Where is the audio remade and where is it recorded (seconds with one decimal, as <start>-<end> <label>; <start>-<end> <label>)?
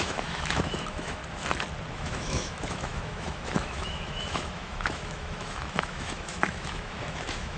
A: 0.0-1.2 remade; 1.2-1.9 recorded; 1.9-7.6 remade